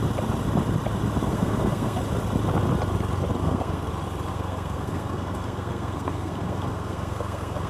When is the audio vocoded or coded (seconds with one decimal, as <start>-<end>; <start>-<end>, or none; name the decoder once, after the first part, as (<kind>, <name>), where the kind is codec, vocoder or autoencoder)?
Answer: 1.2-2.0 (codec, SNAC); 3.4-3.9; 4.3-7.7

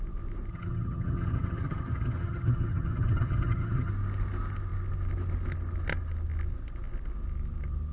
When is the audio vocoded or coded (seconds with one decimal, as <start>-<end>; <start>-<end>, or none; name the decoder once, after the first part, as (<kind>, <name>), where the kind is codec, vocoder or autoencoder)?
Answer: 0.5-3.9 (vocoder, HiFi-GAN)

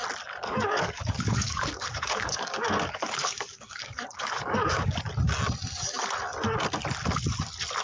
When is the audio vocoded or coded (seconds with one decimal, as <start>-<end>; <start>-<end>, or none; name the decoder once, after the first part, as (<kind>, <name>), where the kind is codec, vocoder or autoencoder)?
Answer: 0.4-5.0 (codec, DAC)

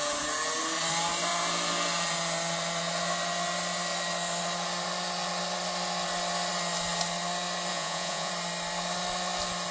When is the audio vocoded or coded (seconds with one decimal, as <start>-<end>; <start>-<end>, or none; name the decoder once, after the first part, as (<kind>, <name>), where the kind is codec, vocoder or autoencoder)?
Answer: 7.7-8.3 (vocoder, Vocos)